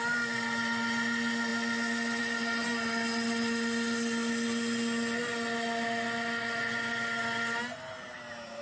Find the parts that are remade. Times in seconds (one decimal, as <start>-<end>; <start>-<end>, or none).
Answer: none